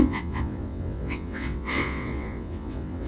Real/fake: fake